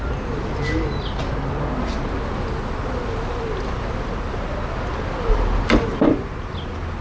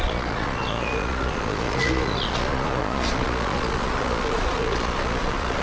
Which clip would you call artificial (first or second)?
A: second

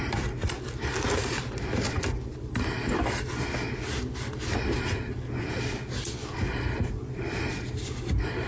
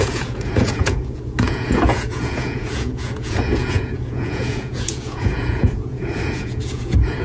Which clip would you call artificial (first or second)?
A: second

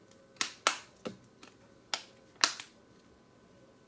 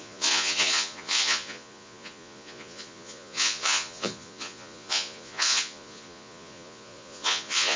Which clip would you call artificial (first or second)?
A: second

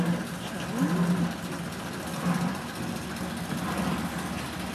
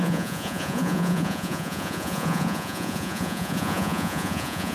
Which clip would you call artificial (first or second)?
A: second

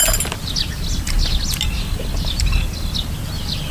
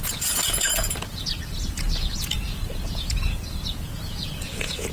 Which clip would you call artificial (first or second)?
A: second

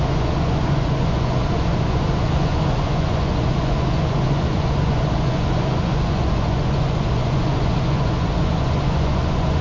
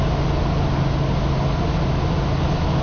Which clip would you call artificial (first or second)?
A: first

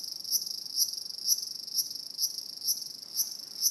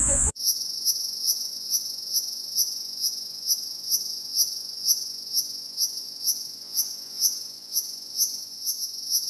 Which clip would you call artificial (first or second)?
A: second